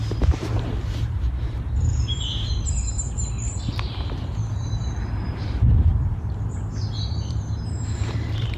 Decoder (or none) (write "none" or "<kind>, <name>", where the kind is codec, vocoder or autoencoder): vocoder, BigVGAN v2